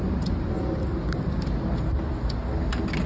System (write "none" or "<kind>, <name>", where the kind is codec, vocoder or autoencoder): none